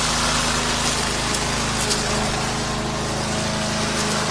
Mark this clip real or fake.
real